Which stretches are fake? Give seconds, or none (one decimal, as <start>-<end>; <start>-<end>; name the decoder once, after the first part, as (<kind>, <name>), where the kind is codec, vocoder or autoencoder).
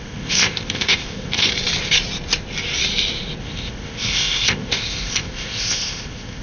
0.0-1.5 (codec, ZipCodec); 3.4-6.4